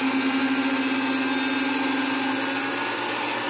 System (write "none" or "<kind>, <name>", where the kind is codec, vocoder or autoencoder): none